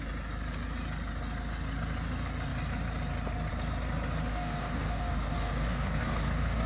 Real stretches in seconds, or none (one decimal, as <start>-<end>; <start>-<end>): 0.0-4.3